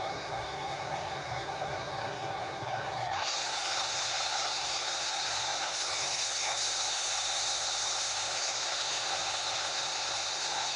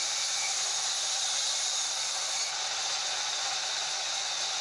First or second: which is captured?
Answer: second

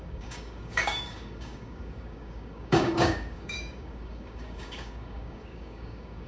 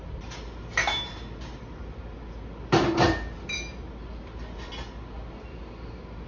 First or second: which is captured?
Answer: second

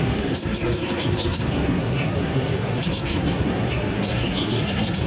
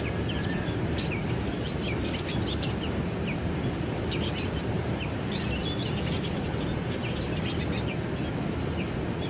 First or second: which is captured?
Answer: second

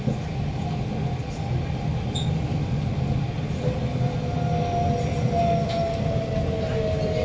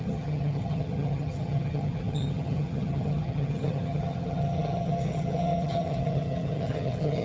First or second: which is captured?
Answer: first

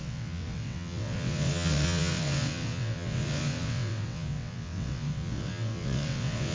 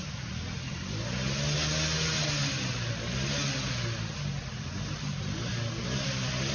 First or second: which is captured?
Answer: second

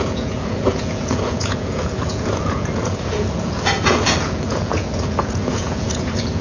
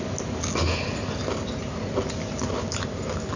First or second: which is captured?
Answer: second